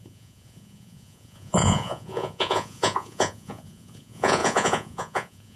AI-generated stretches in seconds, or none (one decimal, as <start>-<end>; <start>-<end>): 0.0-5.6